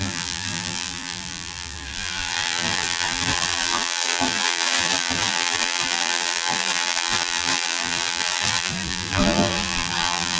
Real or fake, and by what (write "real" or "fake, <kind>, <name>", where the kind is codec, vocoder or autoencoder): fake, vocoder, BigVGAN v2